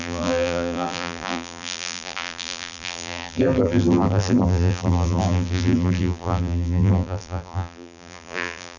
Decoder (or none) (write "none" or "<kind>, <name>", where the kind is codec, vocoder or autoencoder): vocoder, BigVGAN v2